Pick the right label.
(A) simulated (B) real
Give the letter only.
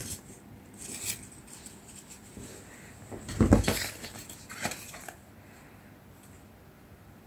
B